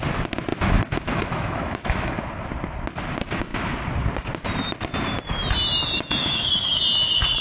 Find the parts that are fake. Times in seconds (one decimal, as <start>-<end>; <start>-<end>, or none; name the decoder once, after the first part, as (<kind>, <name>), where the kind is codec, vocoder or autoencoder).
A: 0.5-2.1 (autoencoder, DAC-VAE); 6.2-6.8

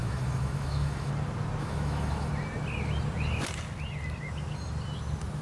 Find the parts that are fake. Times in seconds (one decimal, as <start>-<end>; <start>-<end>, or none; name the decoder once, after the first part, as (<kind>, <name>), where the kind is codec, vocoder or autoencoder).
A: 0.0-1.1 (autoencoder, DAC-VAE); 1.6-2.3